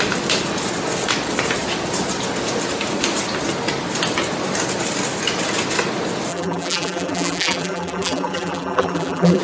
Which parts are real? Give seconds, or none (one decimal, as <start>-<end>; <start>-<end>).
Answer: 0.0-6.3